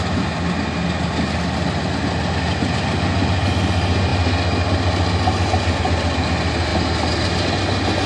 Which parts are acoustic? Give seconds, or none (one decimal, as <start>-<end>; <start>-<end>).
0.0-8.1